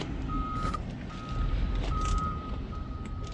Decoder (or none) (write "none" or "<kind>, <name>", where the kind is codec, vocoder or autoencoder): vocoder, BigVGAN v2